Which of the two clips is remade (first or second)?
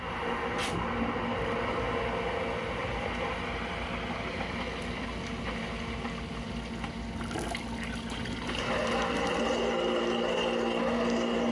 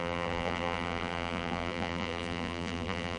second